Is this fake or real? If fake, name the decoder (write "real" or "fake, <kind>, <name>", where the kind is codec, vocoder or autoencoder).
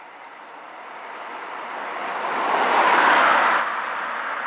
fake, vocoder, BigVGAN v2